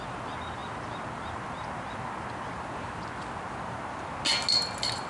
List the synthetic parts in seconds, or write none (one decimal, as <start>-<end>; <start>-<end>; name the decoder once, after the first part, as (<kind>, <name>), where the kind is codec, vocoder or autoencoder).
none